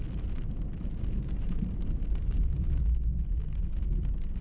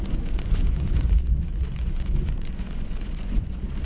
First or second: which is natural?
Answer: first